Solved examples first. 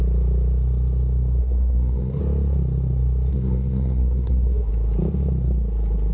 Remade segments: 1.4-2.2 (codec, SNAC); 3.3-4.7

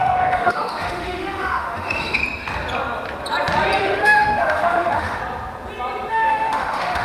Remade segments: 0.0-2.2 (autoencoder, DAC-VAE); 3.8-5.2; 6.1-7.0

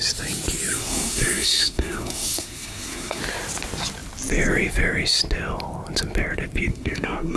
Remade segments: 0.7-3.2 (codec, SNAC); 6.7-7.4

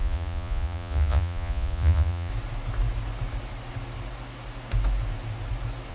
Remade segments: 0.0-2.3 (vocoder, Vocos)

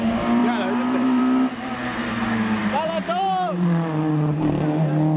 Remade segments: 0.4-1.2 (vocoder, BigVGAN v2); 2.6-4.1